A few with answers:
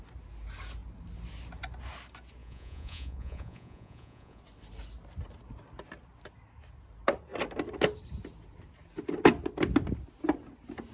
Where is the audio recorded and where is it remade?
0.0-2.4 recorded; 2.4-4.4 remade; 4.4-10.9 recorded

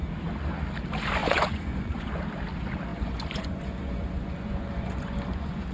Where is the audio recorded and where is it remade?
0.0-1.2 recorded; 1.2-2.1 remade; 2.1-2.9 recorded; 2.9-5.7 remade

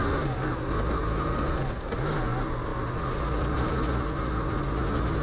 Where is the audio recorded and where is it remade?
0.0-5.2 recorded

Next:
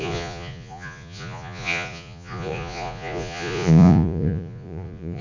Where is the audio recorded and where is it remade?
0.0-5.2 remade